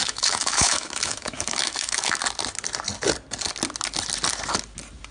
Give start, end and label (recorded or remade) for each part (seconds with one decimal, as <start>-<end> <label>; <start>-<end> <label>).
0.0-2.2 remade; 2.2-5.1 recorded